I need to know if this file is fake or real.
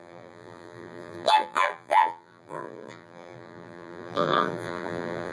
fake